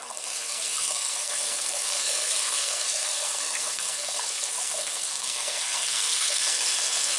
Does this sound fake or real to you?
fake